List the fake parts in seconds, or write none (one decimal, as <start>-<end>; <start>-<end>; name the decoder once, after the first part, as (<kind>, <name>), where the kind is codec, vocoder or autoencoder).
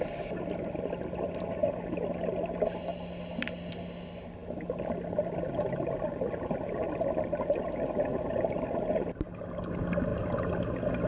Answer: 8.1-8.6 (vocoder, BigVGAN v2)